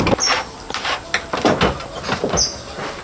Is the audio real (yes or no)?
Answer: yes